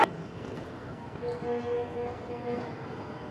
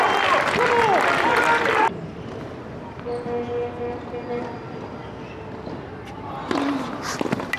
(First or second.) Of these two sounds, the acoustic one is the second